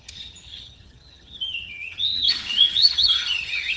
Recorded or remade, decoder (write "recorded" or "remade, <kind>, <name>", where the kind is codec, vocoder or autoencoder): remade, vocoder, HiFi-GAN